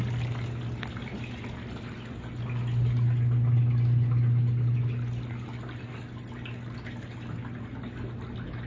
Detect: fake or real real